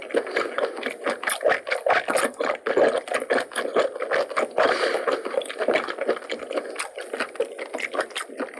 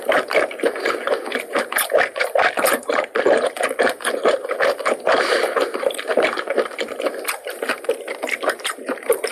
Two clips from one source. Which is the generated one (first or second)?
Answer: second